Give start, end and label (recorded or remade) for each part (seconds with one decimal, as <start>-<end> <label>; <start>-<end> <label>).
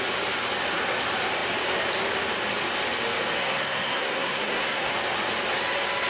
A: 0.0-3.4 recorded; 3.4-4.9 remade; 4.9-6.1 recorded